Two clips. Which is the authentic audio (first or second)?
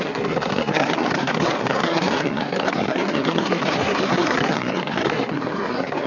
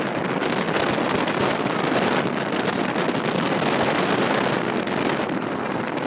second